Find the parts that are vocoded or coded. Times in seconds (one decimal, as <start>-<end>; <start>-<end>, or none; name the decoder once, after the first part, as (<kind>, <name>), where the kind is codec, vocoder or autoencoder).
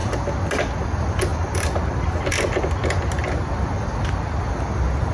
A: 1.3-2.2 (vocoder, BigVGAN v2)